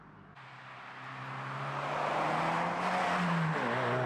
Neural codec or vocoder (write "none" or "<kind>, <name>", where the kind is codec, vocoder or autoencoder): none